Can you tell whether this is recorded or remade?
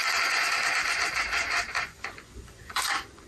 remade